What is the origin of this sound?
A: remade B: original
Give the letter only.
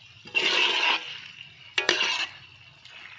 B